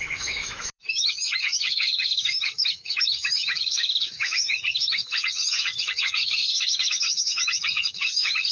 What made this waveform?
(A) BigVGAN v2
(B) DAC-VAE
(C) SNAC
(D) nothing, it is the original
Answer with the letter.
B